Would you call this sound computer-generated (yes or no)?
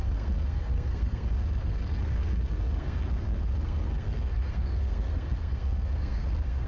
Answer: yes